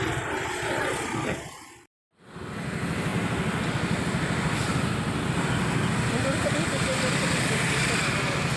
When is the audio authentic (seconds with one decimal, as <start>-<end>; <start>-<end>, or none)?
0.0-8.6